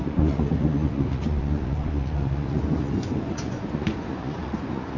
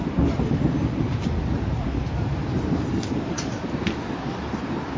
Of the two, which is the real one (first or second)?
second